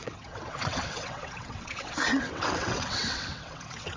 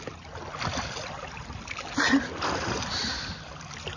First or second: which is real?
second